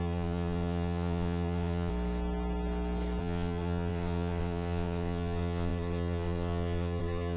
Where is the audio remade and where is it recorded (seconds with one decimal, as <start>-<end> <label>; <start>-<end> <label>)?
0.0-1.9 remade; 1.9-3.2 recorded; 3.2-7.4 remade